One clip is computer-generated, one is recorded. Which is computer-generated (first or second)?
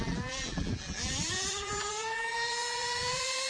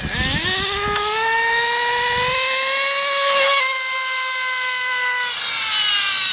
first